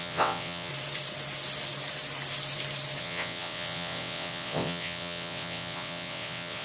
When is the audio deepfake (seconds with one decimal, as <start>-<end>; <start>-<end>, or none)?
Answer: 0.0-0.7; 3.0-6.6